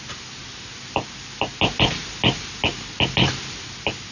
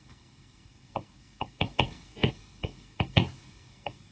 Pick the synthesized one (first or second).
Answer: second